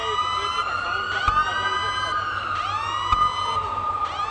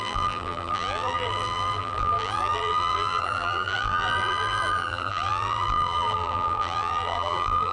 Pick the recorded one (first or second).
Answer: first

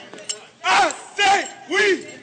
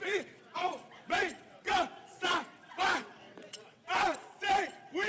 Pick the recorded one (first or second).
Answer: first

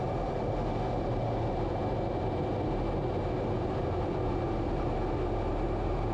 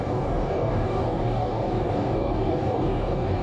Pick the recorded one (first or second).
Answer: first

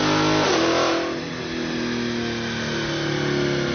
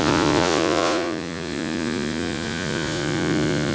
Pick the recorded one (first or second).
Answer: first